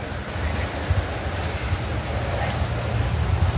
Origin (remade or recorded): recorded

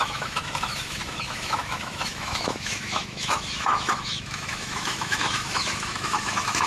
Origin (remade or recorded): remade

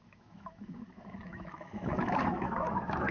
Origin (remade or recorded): remade